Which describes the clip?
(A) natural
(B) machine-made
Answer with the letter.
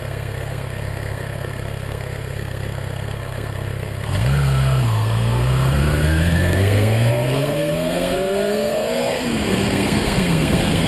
B